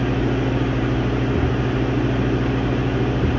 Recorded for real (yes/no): yes